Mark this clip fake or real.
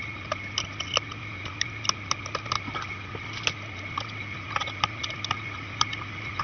real